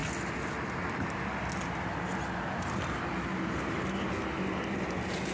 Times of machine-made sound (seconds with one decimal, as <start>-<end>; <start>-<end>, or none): none